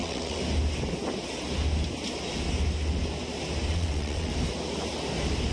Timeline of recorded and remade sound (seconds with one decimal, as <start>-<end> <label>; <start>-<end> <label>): 0.0-0.4 remade; 0.4-3.7 recorded; 3.7-4.3 remade; 4.3-5.5 recorded